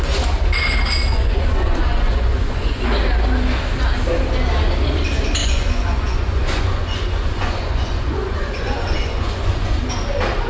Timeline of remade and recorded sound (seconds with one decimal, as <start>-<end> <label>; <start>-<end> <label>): 0.0-1.1 recorded; 1.1-2.8 remade; 2.8-5.4 recorded; 5.4-9.9 remade; 9.9-10.5 recorded